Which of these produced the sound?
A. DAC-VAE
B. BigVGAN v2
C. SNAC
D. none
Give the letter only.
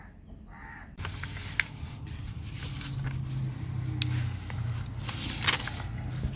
D